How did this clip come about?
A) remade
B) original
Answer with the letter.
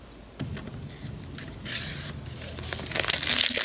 B